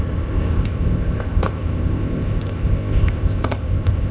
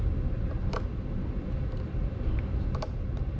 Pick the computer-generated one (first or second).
first